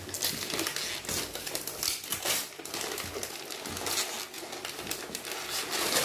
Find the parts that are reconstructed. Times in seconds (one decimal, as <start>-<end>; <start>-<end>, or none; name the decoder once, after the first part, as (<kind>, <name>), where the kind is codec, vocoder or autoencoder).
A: none